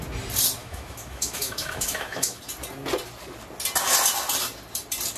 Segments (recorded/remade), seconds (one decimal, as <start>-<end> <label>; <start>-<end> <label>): 0.0-0.6 recorded; 0.6-2.4 remade; 2.4-5.2 recorded